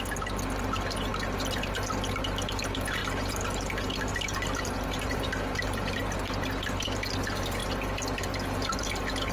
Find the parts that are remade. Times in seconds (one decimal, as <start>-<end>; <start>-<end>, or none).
3.0-6.0